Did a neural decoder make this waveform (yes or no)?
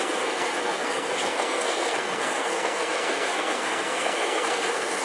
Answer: yes